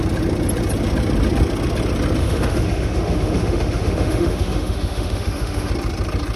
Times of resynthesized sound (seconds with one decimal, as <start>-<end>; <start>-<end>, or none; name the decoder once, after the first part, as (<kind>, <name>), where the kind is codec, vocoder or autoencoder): 2.2-5.7 (autoencoder, DAC-VAE)